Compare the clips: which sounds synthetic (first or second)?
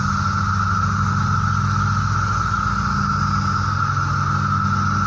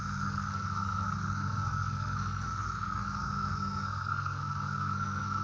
second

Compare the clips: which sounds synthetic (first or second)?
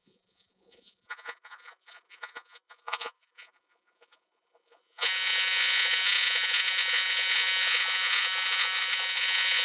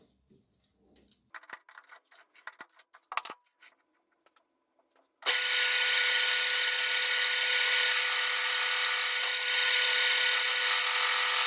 first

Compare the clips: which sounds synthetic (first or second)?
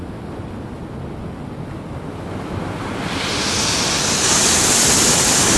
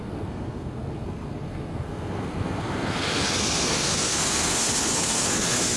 second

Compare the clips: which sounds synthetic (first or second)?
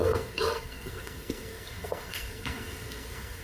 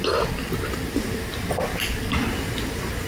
first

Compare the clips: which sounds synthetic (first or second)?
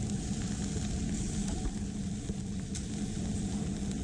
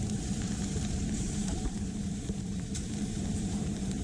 second